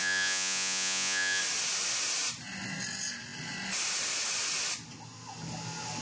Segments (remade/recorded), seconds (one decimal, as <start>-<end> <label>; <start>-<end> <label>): 0.0-1.4 remade; 1.4-6.0 recorded